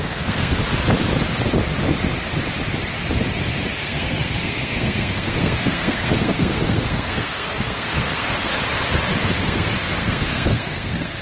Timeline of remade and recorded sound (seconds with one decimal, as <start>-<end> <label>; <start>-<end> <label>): 0.0-0.6 remade; 0.6-3.8 recorded; 3.8-8.5 remade; 8.5-9.3 recorded; 9.3-11.2 remade